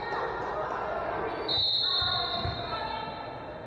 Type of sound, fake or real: real